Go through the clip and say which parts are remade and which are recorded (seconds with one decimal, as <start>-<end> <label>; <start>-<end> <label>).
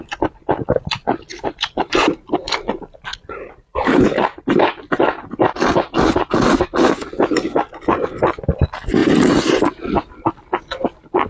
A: 0.0-1.3 recorded; 1.3-2.3 remade; 2.3-3.1 recorded; 3.1-4.4 remade; 4.4-11.3 recorded